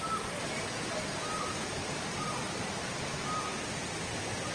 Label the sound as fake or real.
real